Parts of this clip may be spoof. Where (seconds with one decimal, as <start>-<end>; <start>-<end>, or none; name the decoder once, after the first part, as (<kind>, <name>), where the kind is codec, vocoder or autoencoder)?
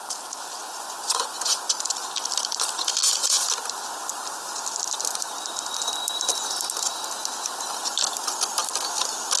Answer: 0.6-1.7 (vocoder, Vocos)